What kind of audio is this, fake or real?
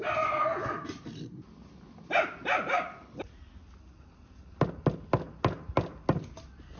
real